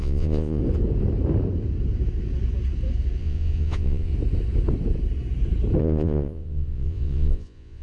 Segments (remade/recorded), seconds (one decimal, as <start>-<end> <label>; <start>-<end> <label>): 0.0-0.6 remade; 0.6-3.2 recorded; 3.2-4.1 remade; 4.1-5.8 recorded; 5.8-7.8 remade